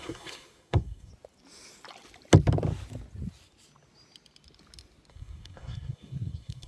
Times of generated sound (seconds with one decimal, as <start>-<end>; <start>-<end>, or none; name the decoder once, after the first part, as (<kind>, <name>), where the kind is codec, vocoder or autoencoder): 0.0-1.1 (codec, SNAC); 5.1-6.7